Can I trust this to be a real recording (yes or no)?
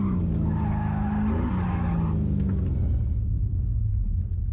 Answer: yes